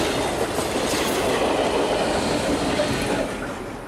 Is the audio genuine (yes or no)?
yes